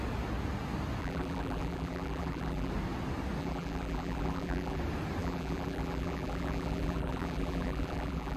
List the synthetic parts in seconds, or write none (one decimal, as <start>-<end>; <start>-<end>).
1.0-2.7; 3.4-4.8; 5.2-8.4